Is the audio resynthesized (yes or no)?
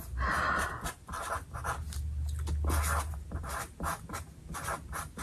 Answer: no